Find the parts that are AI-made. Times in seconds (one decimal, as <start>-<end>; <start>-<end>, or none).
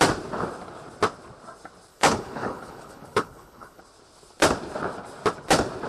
1.9-3.8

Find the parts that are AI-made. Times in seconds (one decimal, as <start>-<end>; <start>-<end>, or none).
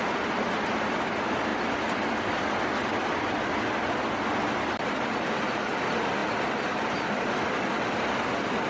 none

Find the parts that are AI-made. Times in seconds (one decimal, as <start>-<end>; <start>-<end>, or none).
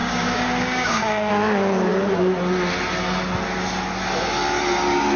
0.0-1.3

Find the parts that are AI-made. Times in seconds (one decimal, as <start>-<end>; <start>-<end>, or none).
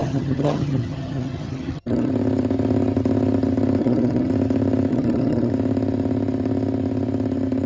0.0-2.1; 3.8-4.3; 4.9-5.5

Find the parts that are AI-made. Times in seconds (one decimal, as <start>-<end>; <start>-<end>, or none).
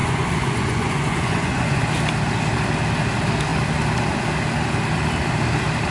0.0-1.8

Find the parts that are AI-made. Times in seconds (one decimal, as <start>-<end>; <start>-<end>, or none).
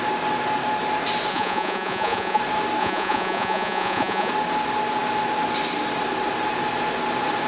1.3-2.4; 2.8-4.3